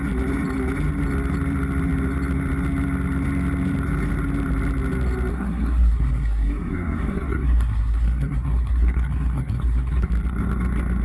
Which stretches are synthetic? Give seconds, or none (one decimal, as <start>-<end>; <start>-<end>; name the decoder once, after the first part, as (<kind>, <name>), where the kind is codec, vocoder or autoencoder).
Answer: 5.3-10.1 (codec, SNAC)

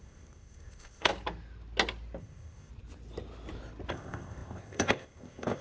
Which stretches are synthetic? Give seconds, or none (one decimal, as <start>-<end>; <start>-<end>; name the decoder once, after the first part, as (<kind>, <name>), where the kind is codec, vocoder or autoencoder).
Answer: 0.0-1.1 (codec, ZipCodec); 2.2-2.7; 3.9-5.6

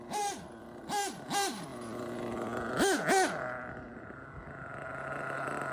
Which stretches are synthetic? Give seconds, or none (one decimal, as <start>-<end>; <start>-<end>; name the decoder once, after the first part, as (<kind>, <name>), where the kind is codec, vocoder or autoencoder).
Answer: none